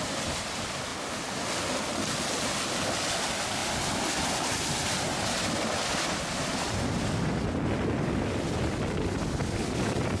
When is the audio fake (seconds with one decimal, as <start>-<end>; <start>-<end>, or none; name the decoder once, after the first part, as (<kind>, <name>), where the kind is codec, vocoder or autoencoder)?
none